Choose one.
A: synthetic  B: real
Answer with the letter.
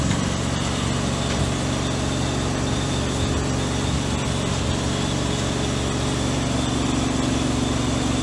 B